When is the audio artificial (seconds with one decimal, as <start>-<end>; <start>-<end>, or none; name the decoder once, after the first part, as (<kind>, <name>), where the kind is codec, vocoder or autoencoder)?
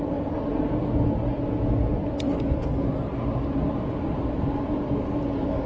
1.8-4.3 (vocoder, BigVGAN v2)